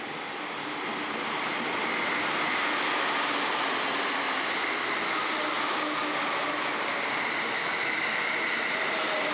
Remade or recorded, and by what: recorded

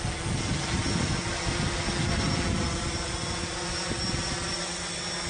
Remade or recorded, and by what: recorded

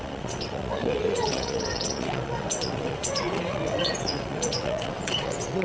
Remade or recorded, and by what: remade, vocoder, WaveNeXt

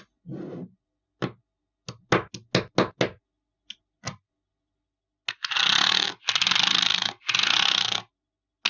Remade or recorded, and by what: recorded